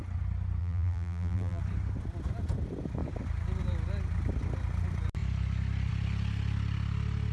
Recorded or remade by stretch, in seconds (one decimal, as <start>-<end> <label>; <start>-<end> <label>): 0.0-0.6 recorded; 0.6-1.6 remade; 1.6-7.3 recorded

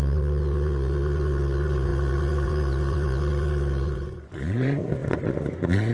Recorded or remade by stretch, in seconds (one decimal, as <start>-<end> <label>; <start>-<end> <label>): 0.0-5.9 remade

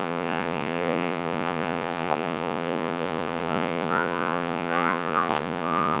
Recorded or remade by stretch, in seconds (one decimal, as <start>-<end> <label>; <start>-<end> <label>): 0.0-6.0 remade

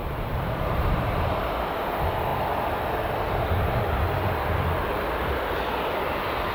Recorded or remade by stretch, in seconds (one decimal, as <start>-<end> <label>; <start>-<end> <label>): 0.0-1.5 remade; 1.5-6.5 recorded

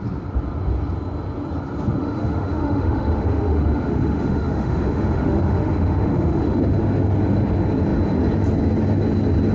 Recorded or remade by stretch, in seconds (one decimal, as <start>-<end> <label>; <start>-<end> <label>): 0.0-2.0 recorded; 2.0-6.8 remade; 6.8-9.5 recorded

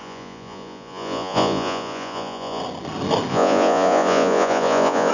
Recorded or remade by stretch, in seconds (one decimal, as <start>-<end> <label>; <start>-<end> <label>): 0.0-2.6 remade; 2.6-3.3 recorded; 3.3-5.1 remade